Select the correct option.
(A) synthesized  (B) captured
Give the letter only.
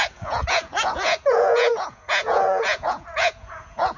A